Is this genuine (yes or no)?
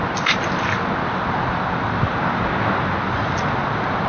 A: yes